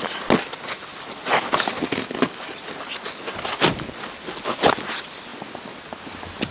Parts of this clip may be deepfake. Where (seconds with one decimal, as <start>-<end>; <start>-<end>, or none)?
none